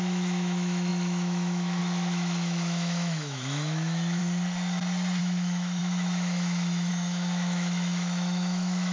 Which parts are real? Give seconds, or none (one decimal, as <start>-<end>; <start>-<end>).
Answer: 4.2-5.2